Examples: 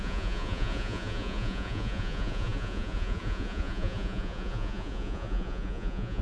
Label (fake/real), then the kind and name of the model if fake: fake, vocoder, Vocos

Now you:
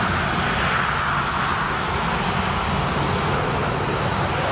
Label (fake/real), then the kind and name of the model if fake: real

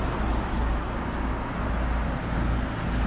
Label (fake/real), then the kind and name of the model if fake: real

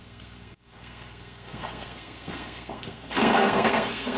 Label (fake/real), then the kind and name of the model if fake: fake, codec, SNAC